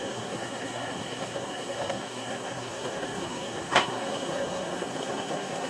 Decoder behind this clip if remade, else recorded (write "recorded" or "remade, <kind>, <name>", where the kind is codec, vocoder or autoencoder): remade, codec, SNAC